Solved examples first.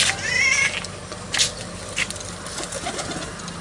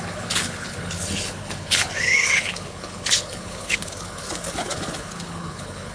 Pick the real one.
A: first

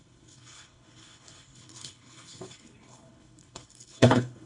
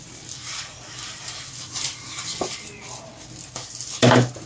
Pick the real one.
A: second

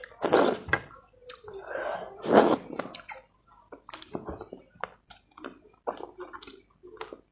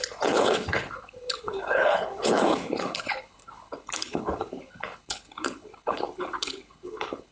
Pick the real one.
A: first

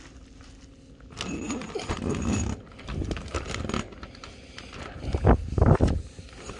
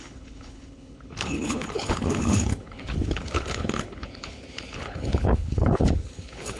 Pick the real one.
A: first